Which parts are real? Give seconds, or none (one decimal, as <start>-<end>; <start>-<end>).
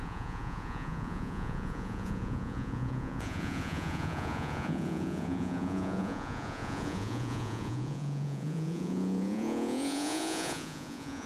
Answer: none